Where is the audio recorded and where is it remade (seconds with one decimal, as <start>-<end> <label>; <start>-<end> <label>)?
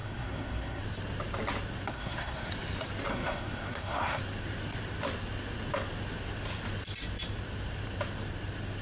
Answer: 0.0-0.8 remade; 0.8-1.9 recorded; 1.9-2.5 remade; 2.5-3.1 recorded; 3.1-4.2 remade; 4.2-8.8 recorded